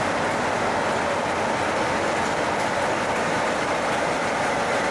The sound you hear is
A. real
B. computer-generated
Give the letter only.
A